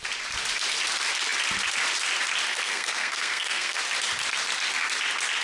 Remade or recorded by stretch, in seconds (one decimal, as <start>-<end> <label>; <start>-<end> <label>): 0.0-2.5 recorded; 2.5-3.8 remade; 3.8-5.4 recorded